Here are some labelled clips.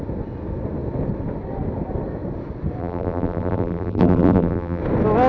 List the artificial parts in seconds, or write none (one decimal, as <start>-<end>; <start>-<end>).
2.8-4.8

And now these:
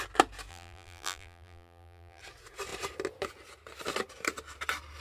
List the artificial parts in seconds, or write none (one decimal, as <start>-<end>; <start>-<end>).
0.5-2.2

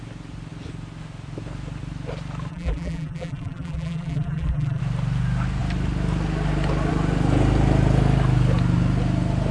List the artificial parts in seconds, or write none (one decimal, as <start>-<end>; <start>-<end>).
2.5-4.8